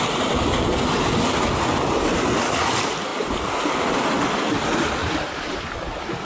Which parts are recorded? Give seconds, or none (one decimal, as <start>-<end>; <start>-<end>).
0.0-5.0